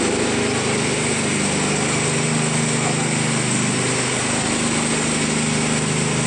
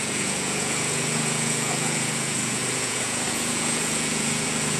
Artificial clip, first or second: second